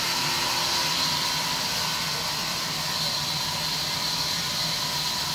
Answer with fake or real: real